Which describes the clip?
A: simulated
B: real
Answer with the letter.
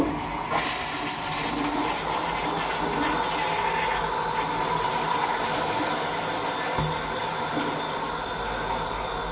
B